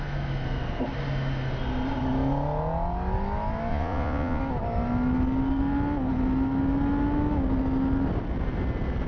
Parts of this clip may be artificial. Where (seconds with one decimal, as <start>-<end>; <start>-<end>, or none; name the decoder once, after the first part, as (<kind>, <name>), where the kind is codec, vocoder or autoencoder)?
3.7-4.4 (vocoder, Vocos)